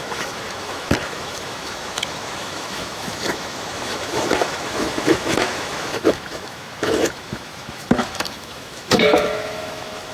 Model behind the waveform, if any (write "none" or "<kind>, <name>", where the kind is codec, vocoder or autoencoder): autoencoder, DAC-VAE